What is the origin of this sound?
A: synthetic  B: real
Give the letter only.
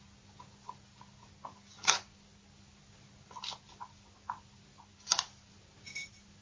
B